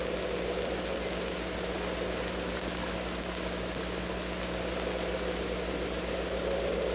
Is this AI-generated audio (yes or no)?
no